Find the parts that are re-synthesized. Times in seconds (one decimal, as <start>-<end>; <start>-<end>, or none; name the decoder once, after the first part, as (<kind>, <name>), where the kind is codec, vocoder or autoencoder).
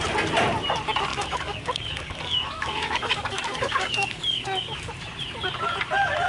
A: 1.1-4.9 (codec, DAC)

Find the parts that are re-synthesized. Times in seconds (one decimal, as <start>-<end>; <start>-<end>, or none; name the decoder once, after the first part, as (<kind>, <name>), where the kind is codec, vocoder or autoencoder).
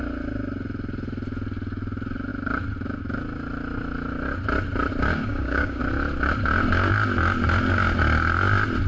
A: 5.1-5.8 (codec, DAC)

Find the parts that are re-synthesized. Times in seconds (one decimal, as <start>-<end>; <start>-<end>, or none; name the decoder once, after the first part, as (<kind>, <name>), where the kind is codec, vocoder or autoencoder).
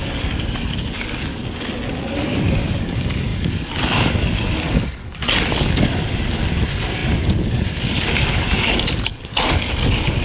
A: 0.0-1.4 (codec, DAC); 2.1-10.2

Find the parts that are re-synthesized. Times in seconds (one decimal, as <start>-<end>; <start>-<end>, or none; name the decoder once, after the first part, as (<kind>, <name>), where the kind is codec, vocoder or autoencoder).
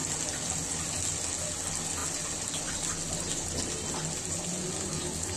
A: none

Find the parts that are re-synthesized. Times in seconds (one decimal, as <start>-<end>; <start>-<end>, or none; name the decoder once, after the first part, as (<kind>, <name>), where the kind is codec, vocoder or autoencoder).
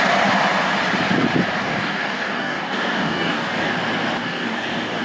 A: 1.6-3.7 (codec, DAC); 4.2-5.0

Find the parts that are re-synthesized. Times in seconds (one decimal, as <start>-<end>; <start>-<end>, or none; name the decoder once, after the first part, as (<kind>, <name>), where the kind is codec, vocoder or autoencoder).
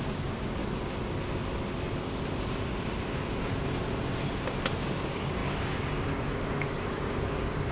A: 0.0-0.6 (codec, DAC); 4.8-7.7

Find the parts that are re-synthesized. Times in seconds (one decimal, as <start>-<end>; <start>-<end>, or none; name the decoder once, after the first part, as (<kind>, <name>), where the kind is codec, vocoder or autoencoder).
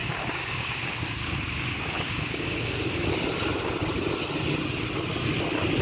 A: 0.0-3.1 (codec, DAC)